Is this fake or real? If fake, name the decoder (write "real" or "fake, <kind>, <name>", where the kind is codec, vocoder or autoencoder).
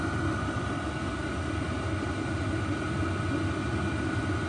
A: real